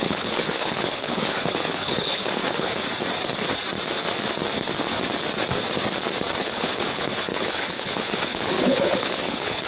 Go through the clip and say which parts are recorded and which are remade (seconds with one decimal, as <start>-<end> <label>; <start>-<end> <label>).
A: 0.0-2.7 remade; 2.7-6.4 recorded; 6.4-9.7 remade